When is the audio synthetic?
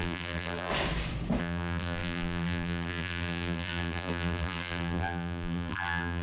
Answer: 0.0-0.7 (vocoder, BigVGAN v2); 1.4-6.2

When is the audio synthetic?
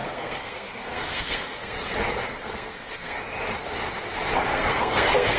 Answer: 0.0-3.2 (codec, SNAC); 4.5-5.4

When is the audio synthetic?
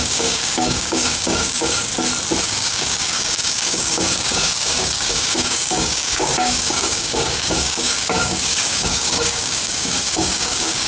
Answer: 0.0-1.9 (codec, DAC); 2.4-10.9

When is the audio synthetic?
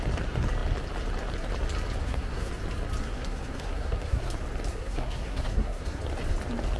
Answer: 2.0-2.5 (codec, SNAC); 3.0-4.3; 4.7-6.0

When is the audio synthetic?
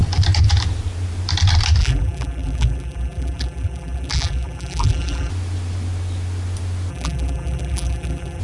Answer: 1.8-5.3 (vocoder, BigVGAN v2); 6.9-8.4